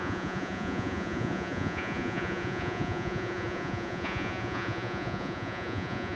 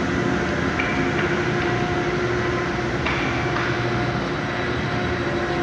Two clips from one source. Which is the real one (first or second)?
second